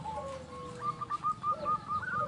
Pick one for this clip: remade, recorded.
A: recorded